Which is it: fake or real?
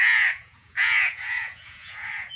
fake